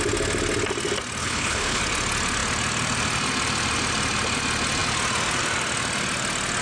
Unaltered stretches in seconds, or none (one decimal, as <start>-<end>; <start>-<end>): 0.0-1.2; 1.8-6.6